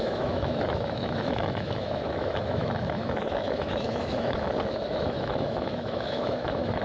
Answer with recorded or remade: remade